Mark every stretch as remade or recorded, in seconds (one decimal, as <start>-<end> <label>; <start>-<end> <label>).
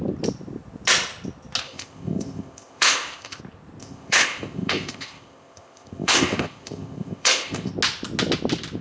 0.0-1.6 recorded; 1.6-3.4 remade; 3.4-3.8 recorded; 3.8-7.7 remade; 7.7-8.8 recorded